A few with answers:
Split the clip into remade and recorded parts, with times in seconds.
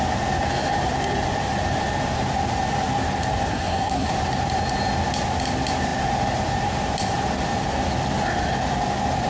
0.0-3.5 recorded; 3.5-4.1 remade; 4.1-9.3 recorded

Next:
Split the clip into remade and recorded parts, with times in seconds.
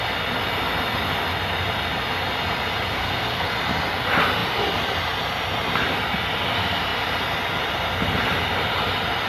0.0-2.9 recorded; 2.9-3.5 remade; 3.5-9.3 recorded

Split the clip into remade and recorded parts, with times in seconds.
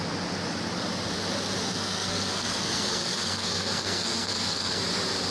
0.0-1.6 recorded; 1.6-4.8 remade; 4.8-5.3 recorded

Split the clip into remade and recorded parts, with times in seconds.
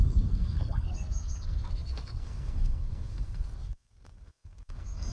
0.0-5.1 remade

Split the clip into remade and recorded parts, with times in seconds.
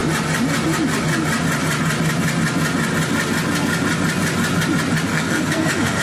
0.0-5.1 recorded; 5.1-6.0 remade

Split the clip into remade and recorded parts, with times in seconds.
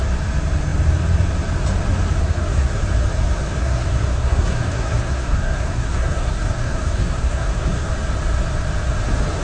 0.0-2.2 recorded; 2.2-2.8 remade; 2.8-3.6 recorded; 3.6-7.9 remade; 7.9-9.4 recorded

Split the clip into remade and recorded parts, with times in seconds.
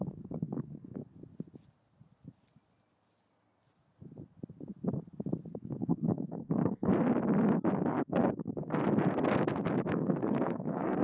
0.0-1.0 remade; 1.0-5.5 recorded; 5.5-6.9 remade; 6.9-7.8 recorded; 7.8-8.8 remade; 8.8-9.9 recorded; 9.9-11.0 remade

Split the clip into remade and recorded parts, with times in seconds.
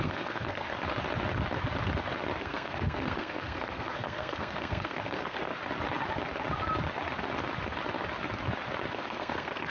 0.0-0.7 remade; 0.7-2.4 recorded; 2.4-5.5 remade; 5.5-8.9 recorded; 8.9-9.7 remade